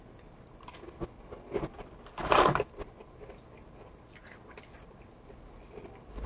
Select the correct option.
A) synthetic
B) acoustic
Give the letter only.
B